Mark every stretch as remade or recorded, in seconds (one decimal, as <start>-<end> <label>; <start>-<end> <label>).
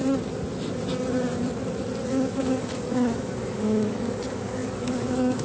0.0-2.1 recorded; 2.1-5.4 remade